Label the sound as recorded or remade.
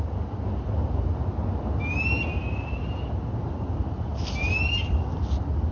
recorded